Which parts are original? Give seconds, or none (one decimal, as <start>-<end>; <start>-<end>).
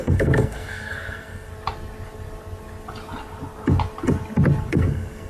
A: 1.5-4.7